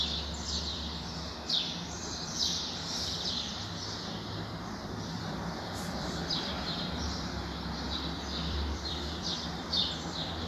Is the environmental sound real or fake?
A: fake